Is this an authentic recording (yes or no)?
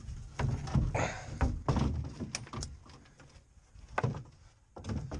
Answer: yes